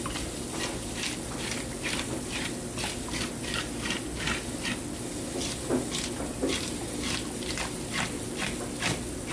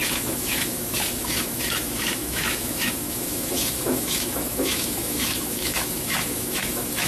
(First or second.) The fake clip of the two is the second